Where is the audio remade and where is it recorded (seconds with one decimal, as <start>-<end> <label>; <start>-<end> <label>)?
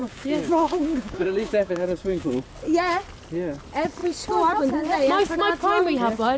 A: 0.0-2.4 remade; 2.4-6.4 recorded